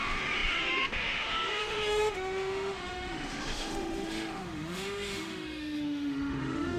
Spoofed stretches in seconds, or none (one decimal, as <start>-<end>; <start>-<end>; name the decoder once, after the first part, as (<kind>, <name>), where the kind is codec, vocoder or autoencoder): 0.0-6.8 (autoencoder, DAC-VAE)